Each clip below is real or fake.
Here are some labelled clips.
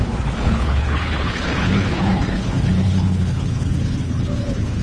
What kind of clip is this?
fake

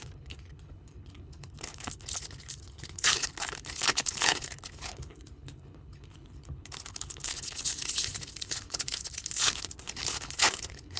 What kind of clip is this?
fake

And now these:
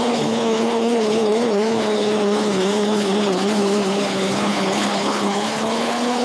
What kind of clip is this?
fake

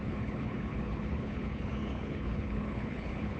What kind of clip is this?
fake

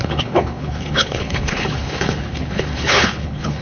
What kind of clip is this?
fake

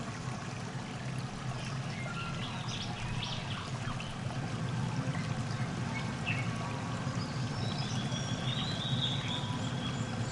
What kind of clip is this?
real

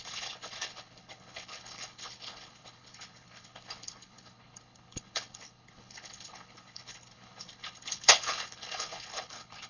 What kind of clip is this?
fake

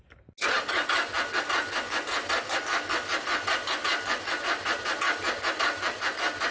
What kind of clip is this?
real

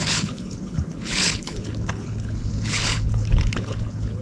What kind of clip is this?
fake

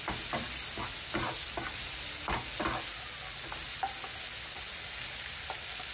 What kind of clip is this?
real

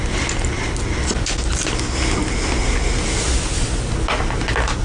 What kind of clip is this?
real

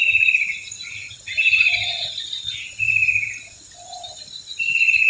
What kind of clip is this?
real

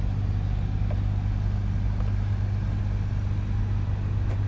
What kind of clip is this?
real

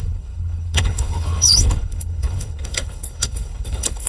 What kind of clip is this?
fake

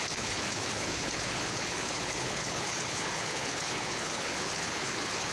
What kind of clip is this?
fake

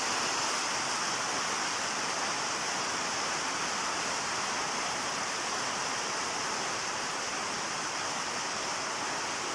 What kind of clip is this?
real